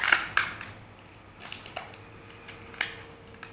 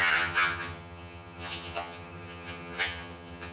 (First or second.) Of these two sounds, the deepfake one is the second